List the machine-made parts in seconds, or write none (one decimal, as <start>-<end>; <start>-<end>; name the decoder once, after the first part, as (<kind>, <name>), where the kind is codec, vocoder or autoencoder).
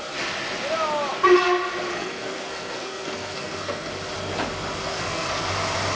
1.9-3.9 (codec, SNAC); 4.9-5.5